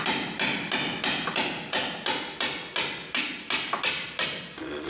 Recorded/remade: recorded